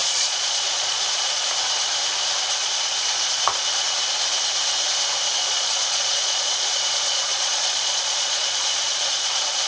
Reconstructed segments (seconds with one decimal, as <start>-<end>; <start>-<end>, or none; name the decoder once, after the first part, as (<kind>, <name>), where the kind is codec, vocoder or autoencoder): 0.0-1.5 (vocoder, Vocos); 2.6-3.6; 5.4-9.7